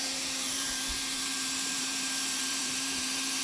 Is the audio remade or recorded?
remade